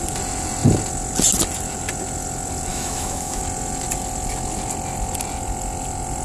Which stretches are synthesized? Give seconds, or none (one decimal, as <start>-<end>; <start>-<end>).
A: 2.7-3.4

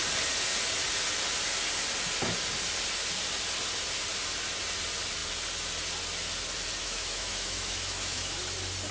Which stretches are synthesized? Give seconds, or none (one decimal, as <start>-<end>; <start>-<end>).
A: 6.8-8.4

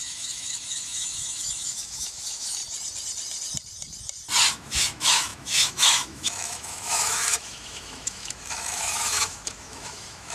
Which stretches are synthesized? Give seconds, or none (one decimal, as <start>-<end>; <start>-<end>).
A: 0.0-2.6; 4.5-10.3

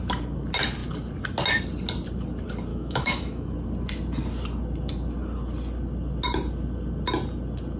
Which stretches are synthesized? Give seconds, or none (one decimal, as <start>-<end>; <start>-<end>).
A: 2.7-3.5

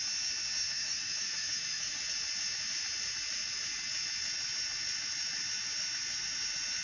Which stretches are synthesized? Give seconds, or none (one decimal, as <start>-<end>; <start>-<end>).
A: 0.6-2.0

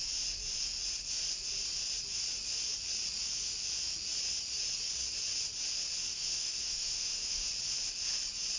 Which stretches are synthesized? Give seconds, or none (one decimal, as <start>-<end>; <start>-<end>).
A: 6.1-7.5

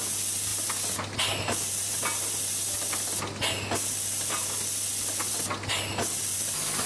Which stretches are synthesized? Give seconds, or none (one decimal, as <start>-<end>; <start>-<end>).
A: none